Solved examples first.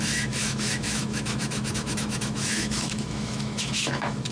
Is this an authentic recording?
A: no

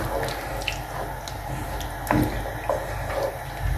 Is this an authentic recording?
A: yes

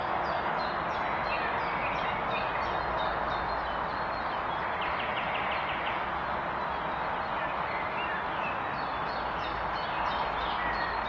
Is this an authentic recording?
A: yes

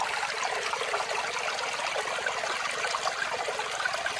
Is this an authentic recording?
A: yes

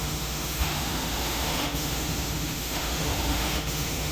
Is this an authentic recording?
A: no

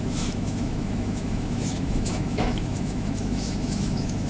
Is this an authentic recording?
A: no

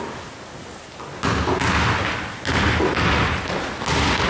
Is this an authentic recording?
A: yes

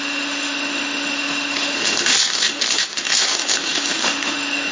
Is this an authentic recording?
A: no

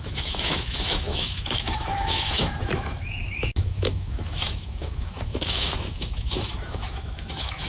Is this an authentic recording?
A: no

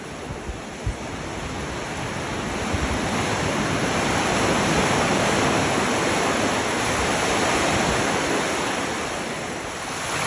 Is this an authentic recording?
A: yes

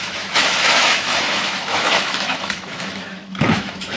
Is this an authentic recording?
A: no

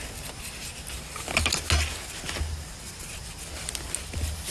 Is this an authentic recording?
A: yes